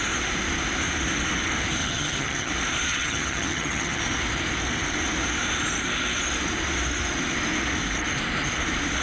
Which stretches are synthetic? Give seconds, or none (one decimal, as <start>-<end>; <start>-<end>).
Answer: 1.8-2.5; 2.9-4.0